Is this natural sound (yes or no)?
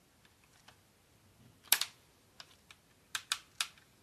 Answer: yes